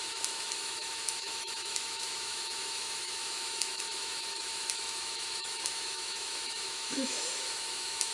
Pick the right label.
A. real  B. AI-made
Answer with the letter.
B